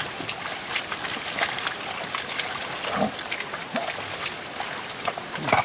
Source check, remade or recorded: recorded